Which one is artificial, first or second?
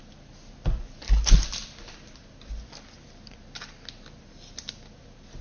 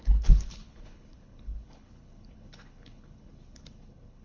second